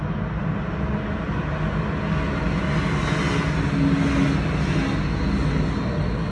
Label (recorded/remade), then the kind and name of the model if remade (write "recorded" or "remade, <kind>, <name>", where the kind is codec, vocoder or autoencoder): recorded